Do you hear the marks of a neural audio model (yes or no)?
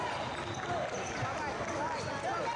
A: no